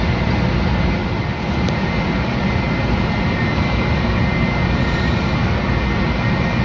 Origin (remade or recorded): recorded